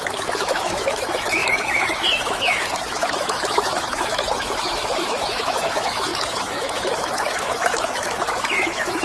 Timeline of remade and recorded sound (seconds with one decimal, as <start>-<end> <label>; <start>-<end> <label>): 0.0-9.0 remade

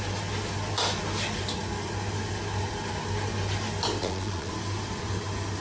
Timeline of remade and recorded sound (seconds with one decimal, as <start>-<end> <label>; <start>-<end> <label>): 0.0-4.0 recorded; 4.0-4.5 remade; 4.5-5.6 recorded

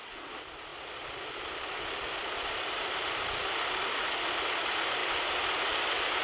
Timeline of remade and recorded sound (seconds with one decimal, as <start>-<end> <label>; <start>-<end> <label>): 0.0-6.2 recorded

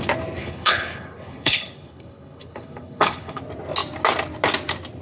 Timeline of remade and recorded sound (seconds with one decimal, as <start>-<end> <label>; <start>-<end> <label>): 0.0-0.4 recorded; 0.4-3.4 remade; 3.4-5.0 recorded

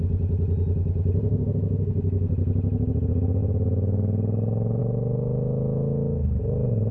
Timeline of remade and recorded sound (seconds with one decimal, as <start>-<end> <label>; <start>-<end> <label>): 0.0-1.2 recorded; 1.2-2.3 remade; 2.3-6.9 recorded

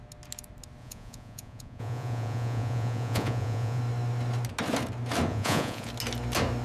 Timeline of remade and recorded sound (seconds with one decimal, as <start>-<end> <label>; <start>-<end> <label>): 0.0-0.8 recorded; 0.8-3.8 remade; 3.8-5.3 recorded; 5.3-5.9 remade; 5.9-6.6 recorded

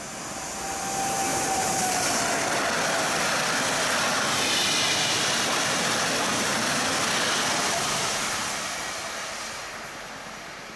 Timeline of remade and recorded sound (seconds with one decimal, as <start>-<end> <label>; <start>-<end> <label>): 0.0-1.3 recorded; 1.3-2.2 remade; 2.2-6.3 recorded; 6.3-6.8 remade; 6.8-10.8 recorded